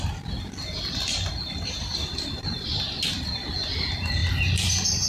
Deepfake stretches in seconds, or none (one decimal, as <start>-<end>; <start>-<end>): 4.2-5.1